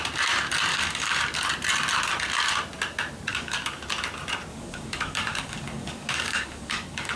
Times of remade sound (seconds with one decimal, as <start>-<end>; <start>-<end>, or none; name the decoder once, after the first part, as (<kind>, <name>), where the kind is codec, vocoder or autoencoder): 0.7-1.2 (codec, DAC); 3.3-3.8; 4.5-7.2